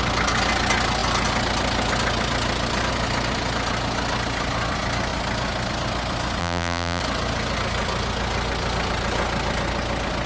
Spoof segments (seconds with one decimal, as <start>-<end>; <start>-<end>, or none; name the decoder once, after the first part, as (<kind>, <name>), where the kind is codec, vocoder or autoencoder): 6.4-7.0 (vocoder, BigVGAN v2)